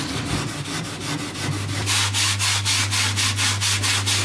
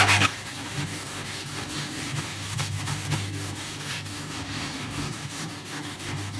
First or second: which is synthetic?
second